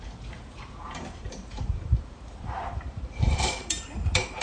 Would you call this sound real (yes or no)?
no